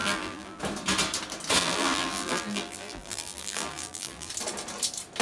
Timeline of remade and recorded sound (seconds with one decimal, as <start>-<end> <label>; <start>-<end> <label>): 0.0-0.6 remade; 0.6-1.6 recorded; 1.6-4.3 remade; 4.3-5.2 recorded